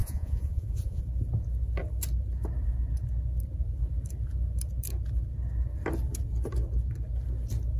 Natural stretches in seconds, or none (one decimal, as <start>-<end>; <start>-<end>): 1.0-7.8